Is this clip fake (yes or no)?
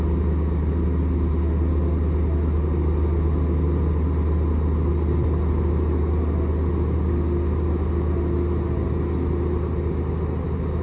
no